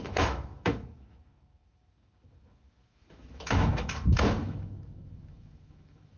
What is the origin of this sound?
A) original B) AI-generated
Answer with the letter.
B